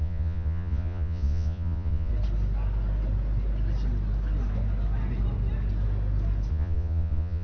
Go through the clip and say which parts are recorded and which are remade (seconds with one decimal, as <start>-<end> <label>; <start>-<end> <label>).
0.0-2.1 remade; 2.1-6.5 recorded; 6.5-7.4 remade